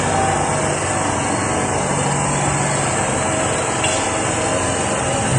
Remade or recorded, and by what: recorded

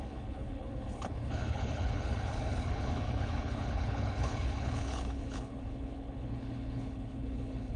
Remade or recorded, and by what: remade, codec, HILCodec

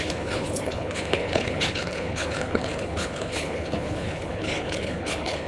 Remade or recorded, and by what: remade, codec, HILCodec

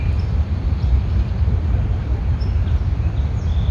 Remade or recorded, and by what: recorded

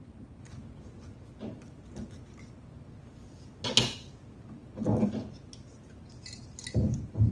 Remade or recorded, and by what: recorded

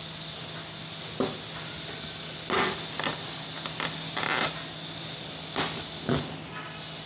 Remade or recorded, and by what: recorded